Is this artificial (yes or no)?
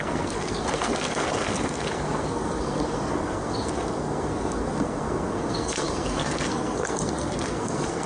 yes